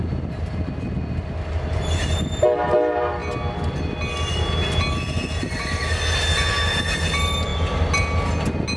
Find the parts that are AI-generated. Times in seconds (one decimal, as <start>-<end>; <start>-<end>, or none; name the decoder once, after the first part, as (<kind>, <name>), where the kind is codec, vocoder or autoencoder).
none